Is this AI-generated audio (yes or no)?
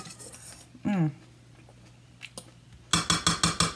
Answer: no